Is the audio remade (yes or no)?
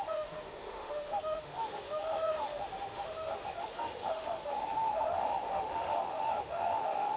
yes